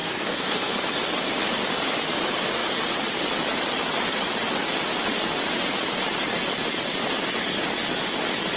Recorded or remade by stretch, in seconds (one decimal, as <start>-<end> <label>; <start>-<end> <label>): 0.0-0.7 remade; 0.7-8.6 recorded